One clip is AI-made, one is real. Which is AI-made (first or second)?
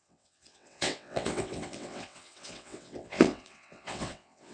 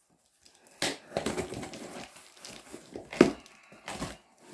first